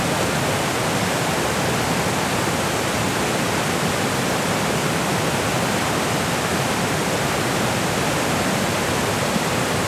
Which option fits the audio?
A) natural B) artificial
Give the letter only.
A